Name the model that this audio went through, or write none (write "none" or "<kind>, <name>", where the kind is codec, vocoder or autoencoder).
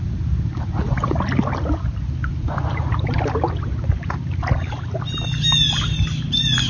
none